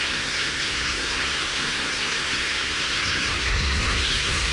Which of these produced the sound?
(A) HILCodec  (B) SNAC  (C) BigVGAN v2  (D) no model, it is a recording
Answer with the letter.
B